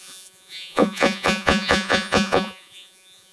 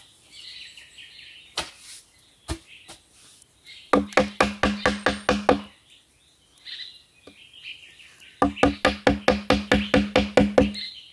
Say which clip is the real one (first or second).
second